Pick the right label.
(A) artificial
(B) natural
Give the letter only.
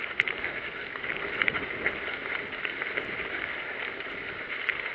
B